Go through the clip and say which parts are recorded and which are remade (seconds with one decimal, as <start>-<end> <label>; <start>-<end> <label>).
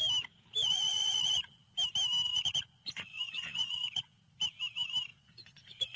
0.0-0.6 recorded; 0.6-1.6 remade; 1.6-2.3 recorded; 2.3-4.1 remade; 4.1-5.1 recorded; 5.1-6.0 remade